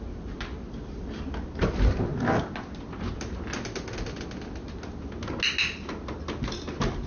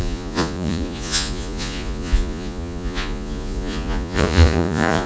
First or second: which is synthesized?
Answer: second